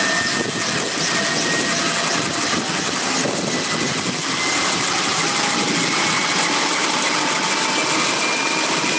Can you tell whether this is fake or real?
real